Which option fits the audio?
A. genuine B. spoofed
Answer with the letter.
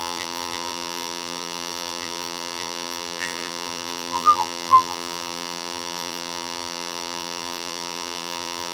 B